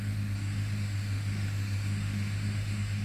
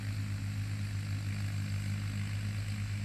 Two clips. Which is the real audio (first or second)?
second